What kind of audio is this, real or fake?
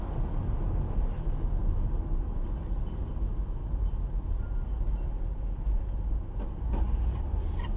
real